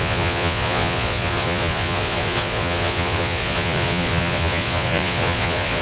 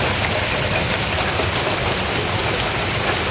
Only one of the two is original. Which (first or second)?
second